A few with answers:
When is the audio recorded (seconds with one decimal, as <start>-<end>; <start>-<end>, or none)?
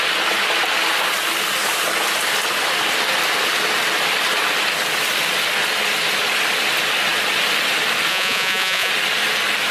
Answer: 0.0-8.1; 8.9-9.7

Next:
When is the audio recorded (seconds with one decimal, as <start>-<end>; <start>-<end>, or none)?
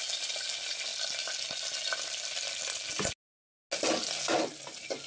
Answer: 0.0-5.1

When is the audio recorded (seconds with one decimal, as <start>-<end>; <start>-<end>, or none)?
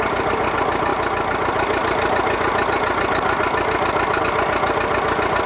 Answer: 0.0-5.5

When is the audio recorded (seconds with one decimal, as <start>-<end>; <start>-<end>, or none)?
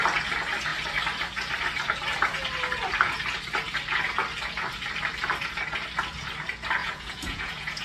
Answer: 0.0-6.8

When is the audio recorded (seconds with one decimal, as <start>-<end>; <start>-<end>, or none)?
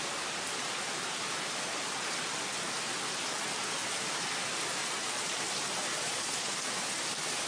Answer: 0.0-4.8; 5.4-5.9; 6.5-7.5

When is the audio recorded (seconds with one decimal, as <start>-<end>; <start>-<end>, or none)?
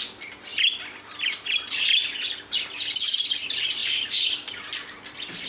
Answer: 0.0-5.5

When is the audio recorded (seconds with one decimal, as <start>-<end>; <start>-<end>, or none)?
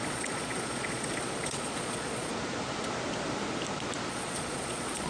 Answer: 2.3-4.1